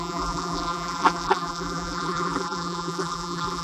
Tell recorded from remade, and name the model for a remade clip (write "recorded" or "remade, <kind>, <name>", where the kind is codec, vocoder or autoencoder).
remade, vocoder, BigVGAN v2